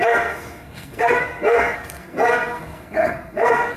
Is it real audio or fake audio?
fake